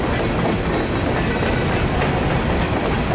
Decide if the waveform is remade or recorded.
recorded